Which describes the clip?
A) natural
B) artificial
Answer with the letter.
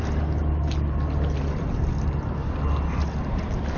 A